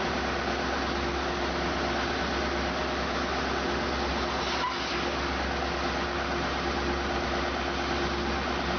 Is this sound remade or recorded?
recorded